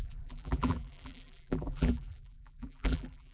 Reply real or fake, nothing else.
fake